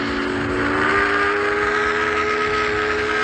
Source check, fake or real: real